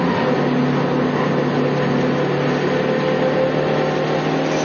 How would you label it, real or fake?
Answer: real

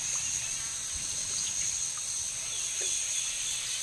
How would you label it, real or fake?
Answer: real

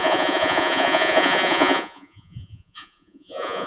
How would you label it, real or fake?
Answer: fake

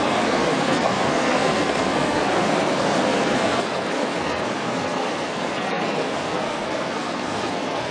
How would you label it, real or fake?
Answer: fake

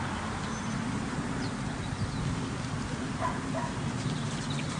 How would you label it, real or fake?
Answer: real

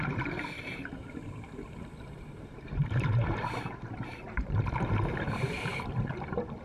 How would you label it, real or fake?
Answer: fake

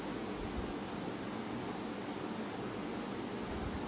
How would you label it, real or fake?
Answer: real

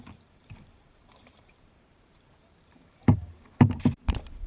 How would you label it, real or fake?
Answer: fake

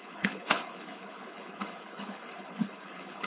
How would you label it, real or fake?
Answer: fake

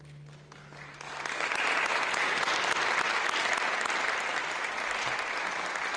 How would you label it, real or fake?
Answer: real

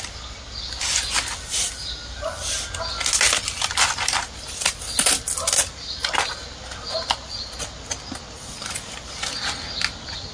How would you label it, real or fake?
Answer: real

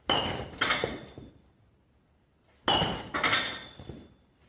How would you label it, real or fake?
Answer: real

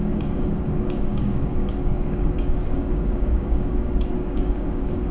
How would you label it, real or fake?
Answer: fake